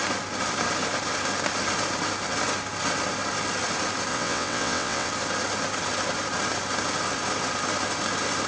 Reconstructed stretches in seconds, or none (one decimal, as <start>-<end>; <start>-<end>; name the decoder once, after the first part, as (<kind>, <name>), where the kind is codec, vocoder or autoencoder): 4.1-5.1 (vocoder, WaveNeXt)